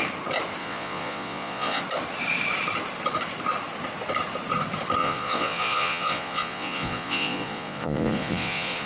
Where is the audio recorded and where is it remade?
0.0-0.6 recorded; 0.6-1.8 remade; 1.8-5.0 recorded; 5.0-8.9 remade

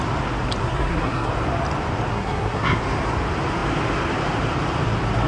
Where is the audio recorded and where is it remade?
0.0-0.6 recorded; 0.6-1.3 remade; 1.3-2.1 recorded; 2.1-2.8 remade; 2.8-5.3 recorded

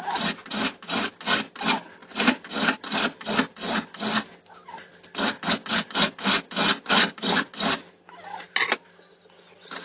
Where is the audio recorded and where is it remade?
0.0-9.8 recorded